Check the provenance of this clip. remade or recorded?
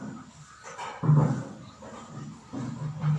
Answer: recorded